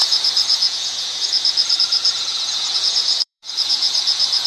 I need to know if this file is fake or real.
fake